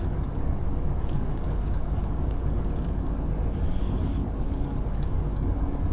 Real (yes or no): no